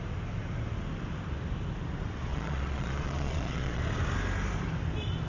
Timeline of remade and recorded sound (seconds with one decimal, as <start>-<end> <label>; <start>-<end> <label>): 0.0-2.3 recorded; 2.3-3.8 remade; 3.8-5.3 recorded